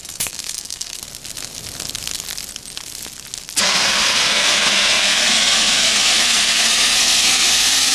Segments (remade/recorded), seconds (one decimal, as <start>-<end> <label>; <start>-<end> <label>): 0.0-1.0 remade; 1.0-3.6 recorded; 3.6-7.9 remade